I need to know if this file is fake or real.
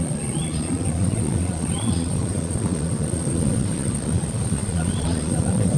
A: fake